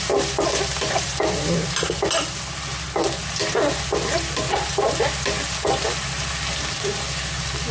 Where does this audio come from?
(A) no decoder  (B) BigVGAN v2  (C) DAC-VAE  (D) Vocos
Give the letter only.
A